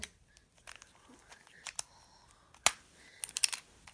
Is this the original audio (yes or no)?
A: yes